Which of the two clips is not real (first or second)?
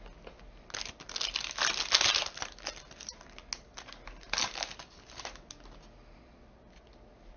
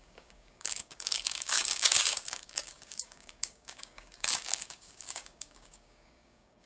second